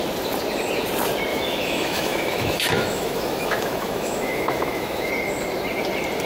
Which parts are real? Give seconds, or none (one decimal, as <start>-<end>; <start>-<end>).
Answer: 0.0-1.3; 5.1-6.3